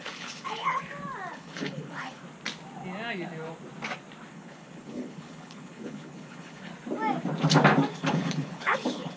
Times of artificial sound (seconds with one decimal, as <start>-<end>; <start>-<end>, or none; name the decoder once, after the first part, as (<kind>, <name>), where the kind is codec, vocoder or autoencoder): 0.0-0.8 (codec, HILCodec); 1.3-2.2; 4.3-6.7; 7.9-9.2